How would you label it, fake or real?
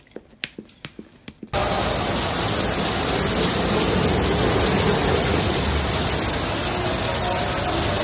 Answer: real